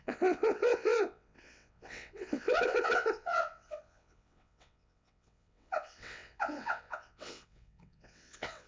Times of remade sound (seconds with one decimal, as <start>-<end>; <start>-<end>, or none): 0.0-8.7